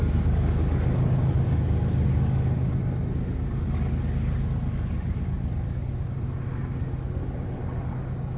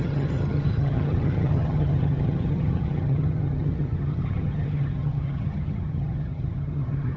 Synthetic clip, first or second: second